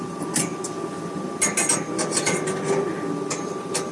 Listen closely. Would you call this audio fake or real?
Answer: real